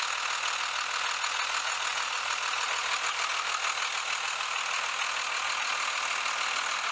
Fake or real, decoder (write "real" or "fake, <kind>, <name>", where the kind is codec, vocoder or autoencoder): real